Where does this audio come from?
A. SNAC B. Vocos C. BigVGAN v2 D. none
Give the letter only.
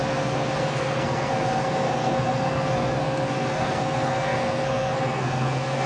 A